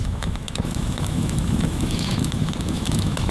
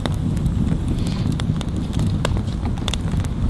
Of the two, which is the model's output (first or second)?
first